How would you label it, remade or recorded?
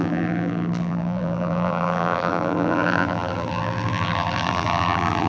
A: remade